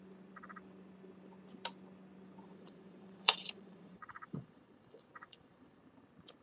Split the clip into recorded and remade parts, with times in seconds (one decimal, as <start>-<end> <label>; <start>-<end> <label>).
0.0-2.4 recorded; 2.4-5.8 remade; 5.8-6.4 recorded